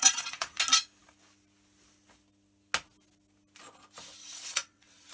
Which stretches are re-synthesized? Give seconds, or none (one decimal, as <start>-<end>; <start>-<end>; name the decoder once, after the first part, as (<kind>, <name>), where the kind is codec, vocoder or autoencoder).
0.0-0.6 (vocoder, WaveNeXt); 4.2-5.1